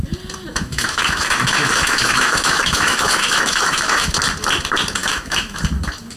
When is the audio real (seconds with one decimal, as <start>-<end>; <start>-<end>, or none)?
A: 0.0-0.5; 4.2-5.0; 5.6-6.2